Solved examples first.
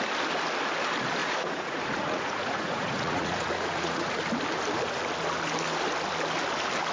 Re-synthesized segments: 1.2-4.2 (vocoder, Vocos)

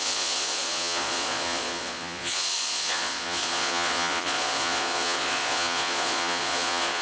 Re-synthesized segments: 0.0-7.0 (vocoder, Vocos)

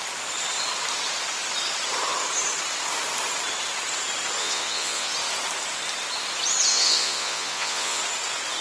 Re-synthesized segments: 4.4-5.1 (vocoder, Vocos); 6.7-8.0

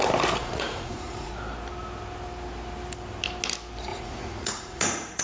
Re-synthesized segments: 0.4-1.3 (vocoder, Vocos); 3.9-5.2

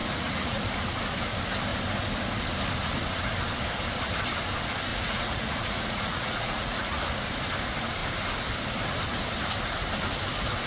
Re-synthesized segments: 0.0-0.6 (vocoder, Vocos); 4.9-7.0

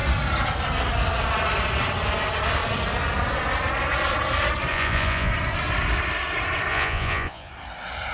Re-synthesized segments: 4.7-5.3 (vocoder, Vocos); 6.7-7.5

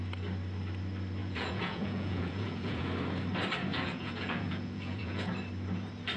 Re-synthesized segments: 1.2-2.8 (vocoder, Vocos); 3.7-5.3

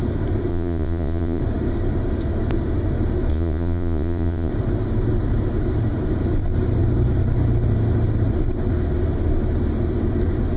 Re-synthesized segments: 0.5-1.4 (vocoder, Vocos); 3.3-4.5